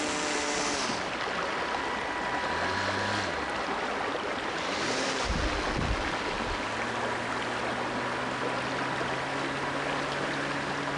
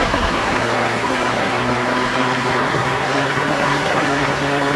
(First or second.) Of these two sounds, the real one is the first